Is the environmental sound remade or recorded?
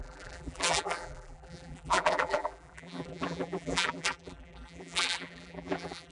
remade